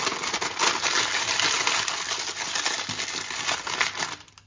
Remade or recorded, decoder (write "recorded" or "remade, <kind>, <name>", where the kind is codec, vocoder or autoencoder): recorded